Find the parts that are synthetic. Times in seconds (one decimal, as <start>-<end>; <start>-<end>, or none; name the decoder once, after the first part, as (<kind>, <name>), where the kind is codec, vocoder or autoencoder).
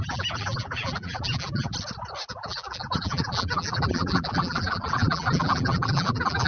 0.0-1.7 (vocoder, BigVGAN v2); 2.3-6.5